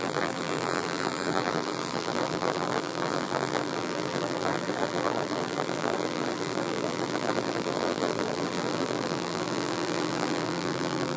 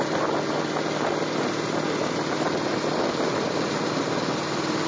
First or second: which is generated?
first